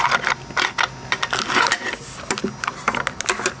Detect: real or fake real